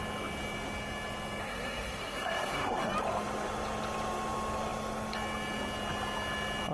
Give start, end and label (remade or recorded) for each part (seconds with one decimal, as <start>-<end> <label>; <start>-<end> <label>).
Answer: 0.0-1.4 recorded; 1.4-2.9 remade; 2.9-6.7 recorded